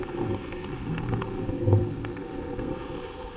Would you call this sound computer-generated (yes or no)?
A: yes